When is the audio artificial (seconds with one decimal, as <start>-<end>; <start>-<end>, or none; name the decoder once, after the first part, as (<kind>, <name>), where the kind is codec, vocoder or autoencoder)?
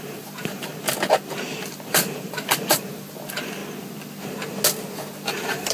0.0-0.7 (vocoder, BigVGAN v2); 1.6-3.6; 5.3-5.7